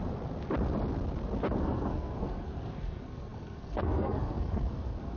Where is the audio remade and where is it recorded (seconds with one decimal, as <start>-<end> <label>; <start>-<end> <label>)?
0.0-1.6 recorded; 1.6-5.2 remade